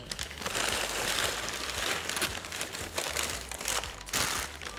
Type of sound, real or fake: fake